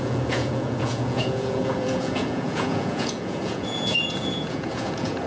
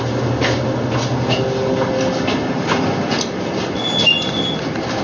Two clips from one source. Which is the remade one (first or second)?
first